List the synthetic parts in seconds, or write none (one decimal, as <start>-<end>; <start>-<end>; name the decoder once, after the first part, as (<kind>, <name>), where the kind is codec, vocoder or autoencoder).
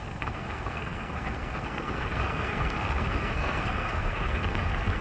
0.0-5.0 (codec, SNAC)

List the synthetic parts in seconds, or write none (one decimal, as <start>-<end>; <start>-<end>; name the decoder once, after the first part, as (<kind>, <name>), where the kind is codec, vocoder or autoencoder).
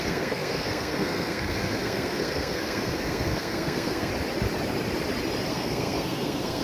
0.0-4.1 (codec, SNAC); 5.5-6.6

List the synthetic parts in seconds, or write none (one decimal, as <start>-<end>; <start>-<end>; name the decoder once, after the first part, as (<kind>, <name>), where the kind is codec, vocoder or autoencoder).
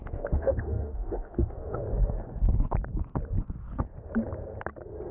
0.0-1.8 (autoencoder, DAC-VAE)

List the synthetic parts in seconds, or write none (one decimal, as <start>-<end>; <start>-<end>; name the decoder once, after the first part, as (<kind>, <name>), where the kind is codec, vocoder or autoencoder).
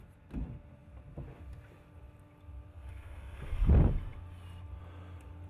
2.7-3.6 (codec, SNAC)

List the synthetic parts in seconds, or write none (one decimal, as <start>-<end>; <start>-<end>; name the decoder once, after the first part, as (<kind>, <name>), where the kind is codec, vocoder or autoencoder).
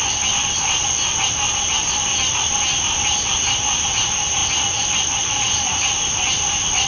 0.4-1.0 (vocoder, BigVGAN v2); 4.4-5.8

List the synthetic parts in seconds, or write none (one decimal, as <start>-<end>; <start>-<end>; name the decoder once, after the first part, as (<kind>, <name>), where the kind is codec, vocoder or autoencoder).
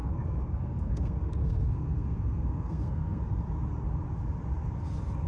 0.0-3.2 (codec, SNAC)